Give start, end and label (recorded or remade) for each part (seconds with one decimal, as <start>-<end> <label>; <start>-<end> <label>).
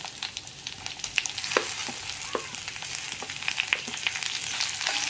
0.0-5.1 recorded